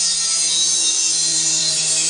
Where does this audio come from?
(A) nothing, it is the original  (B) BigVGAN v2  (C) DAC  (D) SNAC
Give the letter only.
B